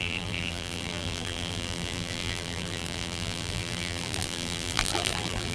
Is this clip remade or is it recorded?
remade